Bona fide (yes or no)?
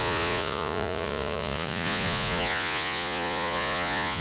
no